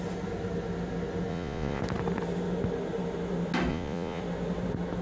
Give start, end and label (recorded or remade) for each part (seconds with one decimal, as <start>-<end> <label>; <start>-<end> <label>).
0.0-1.3 recorded; 1.3-1.8 remade; 1.8-3.7 recorded; 3.7-4.2 remade; 4.2-5.0 recorded

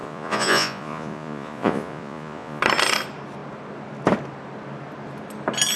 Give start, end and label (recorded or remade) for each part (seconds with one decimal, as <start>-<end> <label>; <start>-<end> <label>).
0.0-2.6 remade; 2.6-5.8 recorded

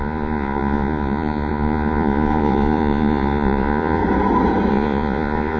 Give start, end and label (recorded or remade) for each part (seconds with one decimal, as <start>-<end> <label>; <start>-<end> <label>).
0.0-4.0 remade; 4.0-4.7 recorded; 4.7-5.6 remade

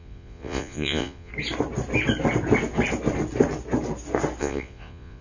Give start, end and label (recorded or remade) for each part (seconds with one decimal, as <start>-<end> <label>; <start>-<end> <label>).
0.0-1.3 remade; 1.3-4.4 recorded; 4.4-5.2 remade

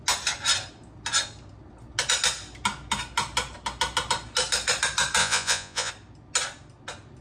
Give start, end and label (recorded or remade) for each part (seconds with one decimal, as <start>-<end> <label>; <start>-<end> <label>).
0.0-5.2 recorded; 5.2-5.9 remade; 5.9-7.2 recorded

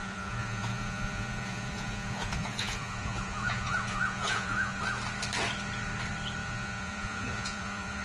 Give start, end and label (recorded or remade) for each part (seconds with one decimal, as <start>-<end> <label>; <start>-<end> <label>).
0.0-4.8 remade; 4.8-6.4 recorded; 6.4-8.0 remade